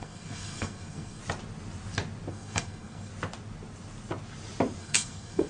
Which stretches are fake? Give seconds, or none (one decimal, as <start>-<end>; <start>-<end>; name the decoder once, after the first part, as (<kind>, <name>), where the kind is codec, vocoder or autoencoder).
0.0-1.2 (codec, SNAC); 2.3-3.1; 4.8-5.5